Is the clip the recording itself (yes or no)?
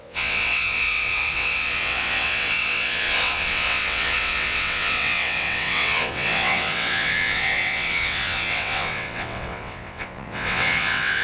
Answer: no